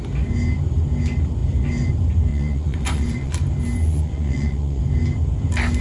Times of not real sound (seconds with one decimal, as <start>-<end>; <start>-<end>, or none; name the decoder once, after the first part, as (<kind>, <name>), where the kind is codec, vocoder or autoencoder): 2.3-3.3 (vocoder, Vocos); 3.8-4.8